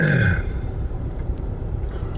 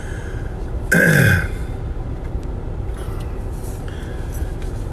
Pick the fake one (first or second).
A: first